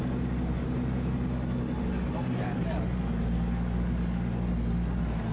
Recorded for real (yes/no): yes